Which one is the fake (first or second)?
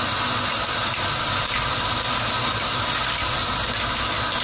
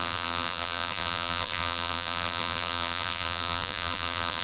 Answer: second